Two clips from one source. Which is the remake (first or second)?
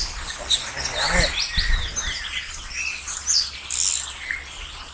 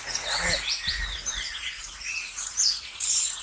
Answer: second